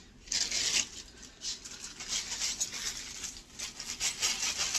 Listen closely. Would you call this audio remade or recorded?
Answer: recorded